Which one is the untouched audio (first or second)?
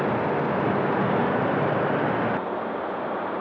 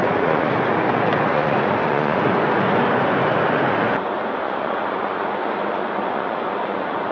first